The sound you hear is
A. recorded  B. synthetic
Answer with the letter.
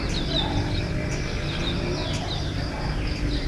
A